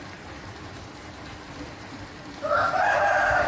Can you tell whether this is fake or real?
fake